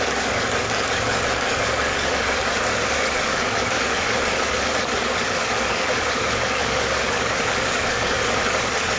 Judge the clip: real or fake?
fake